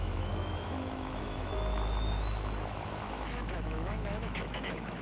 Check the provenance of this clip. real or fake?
fake